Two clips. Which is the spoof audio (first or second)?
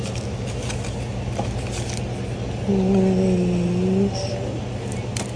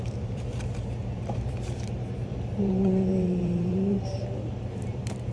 second